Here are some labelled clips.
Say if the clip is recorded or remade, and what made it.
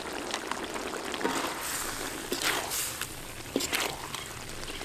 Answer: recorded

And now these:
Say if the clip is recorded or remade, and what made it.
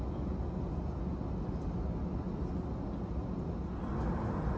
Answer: recorded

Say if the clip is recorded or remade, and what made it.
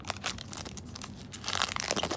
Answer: recorded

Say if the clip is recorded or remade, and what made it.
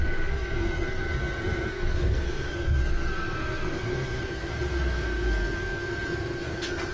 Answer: remade, codec, SNAC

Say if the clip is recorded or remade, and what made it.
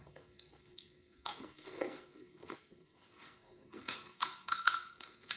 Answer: remade, codec, SNAC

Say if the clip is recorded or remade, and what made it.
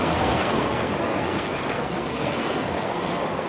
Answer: remade, codec, SNAC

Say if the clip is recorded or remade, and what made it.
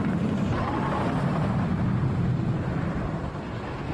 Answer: recorded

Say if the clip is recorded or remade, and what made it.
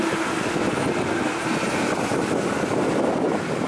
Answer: recorded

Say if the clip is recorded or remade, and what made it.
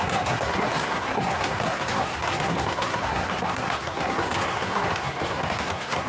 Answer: remade, codec, SNAC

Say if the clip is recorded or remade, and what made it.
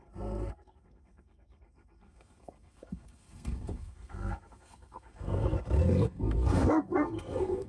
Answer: remade, codec, SNAC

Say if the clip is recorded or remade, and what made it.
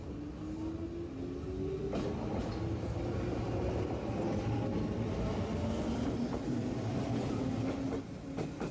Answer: recorded